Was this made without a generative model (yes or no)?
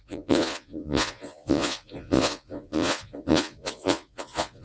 no